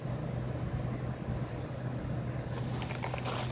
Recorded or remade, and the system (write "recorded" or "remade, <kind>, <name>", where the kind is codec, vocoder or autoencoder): recorded